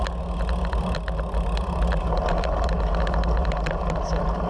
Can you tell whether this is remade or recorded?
recorded